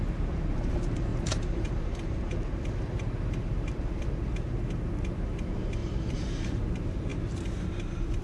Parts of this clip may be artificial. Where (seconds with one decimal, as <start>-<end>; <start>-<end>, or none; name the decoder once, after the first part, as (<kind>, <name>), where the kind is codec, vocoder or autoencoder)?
1.1-2.2 (vocoder, BigVGAN v2); 5.8-6.5